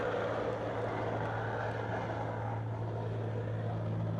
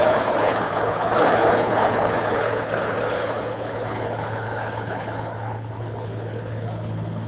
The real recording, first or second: first